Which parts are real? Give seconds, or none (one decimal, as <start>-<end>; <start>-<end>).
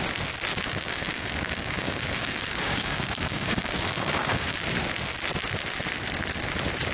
0.0-0.5; 4.6-6.9